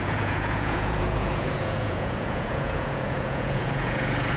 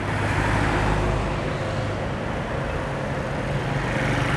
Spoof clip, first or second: first